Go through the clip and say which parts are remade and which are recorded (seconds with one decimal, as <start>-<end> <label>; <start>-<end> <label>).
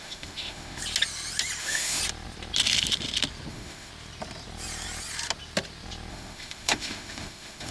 0.0-0.8 remade; 0.8-1.6 recorded; 1.6-2.0 remade; 2.0-3.5 recorded; 3.5-3.9 remade; 3.9-6.1 recorded; 6.1-7.7 remade